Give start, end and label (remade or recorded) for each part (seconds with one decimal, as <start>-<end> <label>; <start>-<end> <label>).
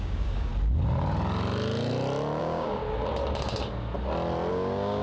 0.0-0.5 remade; 0.5-2.4 recorded; 2.4-2.8 remade; 2.8-4.5 recorded; 4.5-5.0 remade